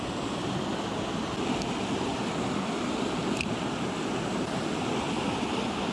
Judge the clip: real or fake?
real